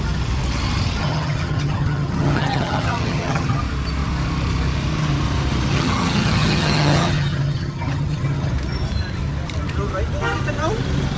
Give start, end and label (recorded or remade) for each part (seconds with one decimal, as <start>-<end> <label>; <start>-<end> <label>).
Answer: 0.0-1.0 recorded; 1.0-3.6 remade; 3.6-5.7 recorded; 5.7-8.5 remade; 8.5-11.2 recorded